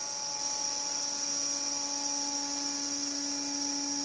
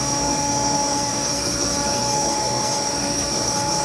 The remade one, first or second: second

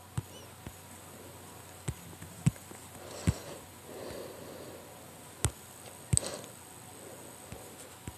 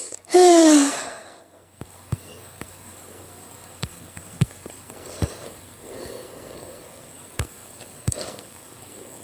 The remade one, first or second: second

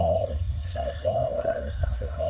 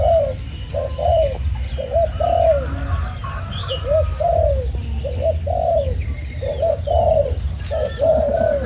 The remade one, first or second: first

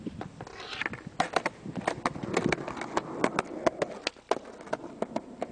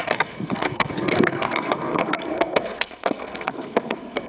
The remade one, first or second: second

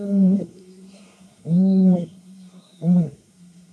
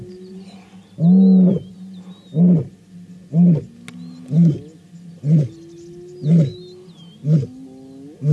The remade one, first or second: first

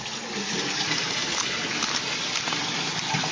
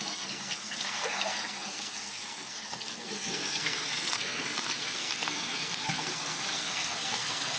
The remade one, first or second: second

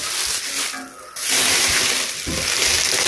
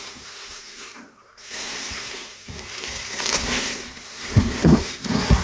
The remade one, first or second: second